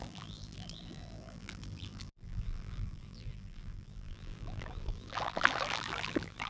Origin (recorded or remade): remade